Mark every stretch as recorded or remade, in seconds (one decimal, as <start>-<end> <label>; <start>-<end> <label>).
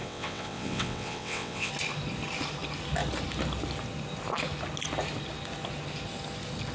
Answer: 0.0-1.7 remade; 1.7-6.7 recorded